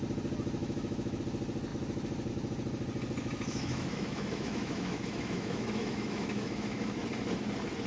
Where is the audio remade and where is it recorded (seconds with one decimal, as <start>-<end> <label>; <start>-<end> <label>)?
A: 0.0-0.6 recorded; 0.6-1.2 remade; 1.2-3.2 recorded; 3.2-7.0 remade; 7.0-7.9 recorded